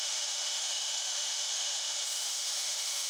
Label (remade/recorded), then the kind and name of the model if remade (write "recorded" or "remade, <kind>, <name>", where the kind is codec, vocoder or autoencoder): remade, autoencoder, DAC-VAE